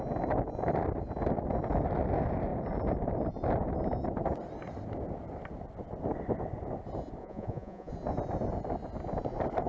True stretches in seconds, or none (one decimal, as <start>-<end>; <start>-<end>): 0.0-7.2; 7.9-9.7